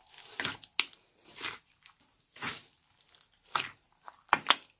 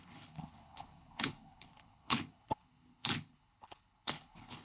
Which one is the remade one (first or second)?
second